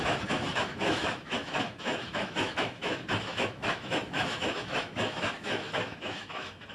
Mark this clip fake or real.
fake